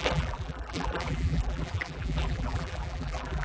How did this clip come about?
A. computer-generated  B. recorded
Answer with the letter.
A